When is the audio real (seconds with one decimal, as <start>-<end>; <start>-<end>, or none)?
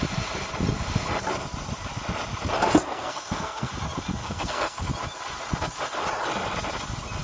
0.0-2.8; 3.7-4.2; 4.9-7.2